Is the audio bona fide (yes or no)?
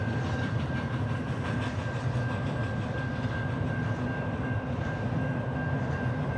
no